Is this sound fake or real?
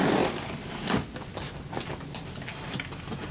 real